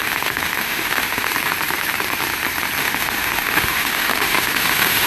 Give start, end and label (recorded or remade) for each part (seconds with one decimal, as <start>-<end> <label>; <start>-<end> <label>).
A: 0.0-1.3 remade; 1.3-2.8 recorded; 2.8-5.1 remade